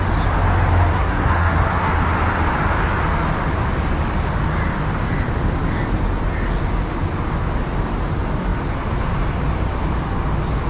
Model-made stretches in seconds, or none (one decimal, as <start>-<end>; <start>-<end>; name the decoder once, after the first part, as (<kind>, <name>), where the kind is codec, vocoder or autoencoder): 0.9-1.9 (codec, SNAC)